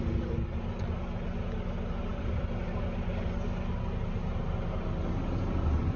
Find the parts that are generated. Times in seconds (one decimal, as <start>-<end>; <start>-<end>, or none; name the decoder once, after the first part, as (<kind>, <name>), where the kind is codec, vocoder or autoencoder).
none